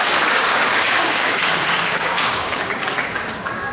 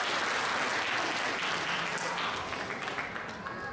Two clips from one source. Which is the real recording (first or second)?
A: second